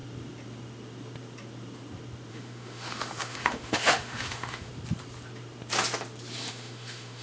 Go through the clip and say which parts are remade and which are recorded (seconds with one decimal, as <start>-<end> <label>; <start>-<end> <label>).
0.0-2.3 recorded; 2.3-4.7 remade; 4.7-6.5 recorded; 6.5-7.2 remade

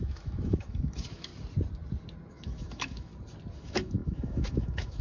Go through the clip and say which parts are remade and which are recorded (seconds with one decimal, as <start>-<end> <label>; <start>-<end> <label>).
0.0-1.3 remade; 1.3-2.3 recorded; 2.3-3.1 remade; 3.1-3.6 recorded; 3.6-5.0 remade

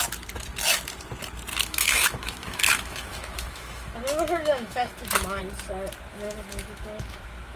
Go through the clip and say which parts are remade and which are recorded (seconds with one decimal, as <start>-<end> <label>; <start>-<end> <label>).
0.0-1.5 recorded; 1.5-5.4 remade; 5.4-6.1 recorded; 6.1-7.6 remade

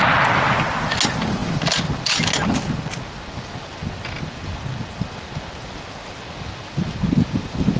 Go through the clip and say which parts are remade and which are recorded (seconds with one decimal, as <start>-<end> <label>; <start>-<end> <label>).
0.0-7.8 recorded

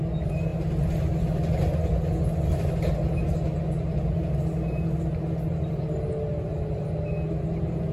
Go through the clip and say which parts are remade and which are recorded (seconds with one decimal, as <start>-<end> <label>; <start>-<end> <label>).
0.0-7.9 recorded

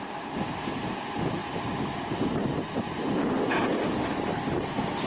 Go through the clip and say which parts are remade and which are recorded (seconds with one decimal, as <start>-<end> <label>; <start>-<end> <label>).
0.0-5.1 recorded